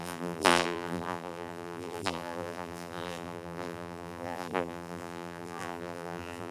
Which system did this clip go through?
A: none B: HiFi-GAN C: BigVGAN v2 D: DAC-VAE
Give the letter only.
C